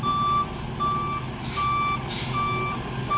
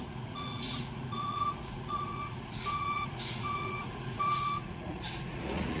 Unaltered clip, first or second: first